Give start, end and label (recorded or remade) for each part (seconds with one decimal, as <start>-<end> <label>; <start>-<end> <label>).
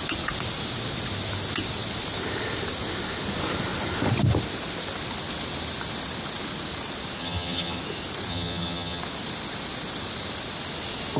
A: 0.0-7.2 recorded; 7.2-7.8 remade; 7.8-8.3 recorded; 8.3-9.0 remade; 9.0-11.2 recorded